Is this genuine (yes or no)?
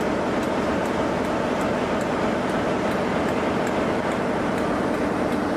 no